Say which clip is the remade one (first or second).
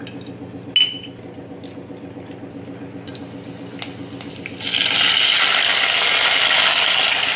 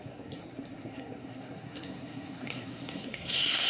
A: second